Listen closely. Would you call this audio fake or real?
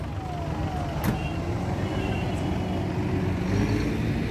real